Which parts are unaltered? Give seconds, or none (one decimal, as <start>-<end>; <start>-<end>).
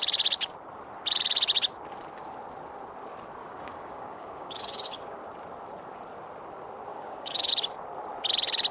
0.0-3.4; 5.2-6.9; 7.5-8.7